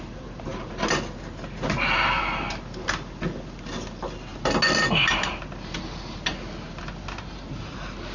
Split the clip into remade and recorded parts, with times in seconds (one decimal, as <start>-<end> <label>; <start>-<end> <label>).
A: 0.0-8.1 recorded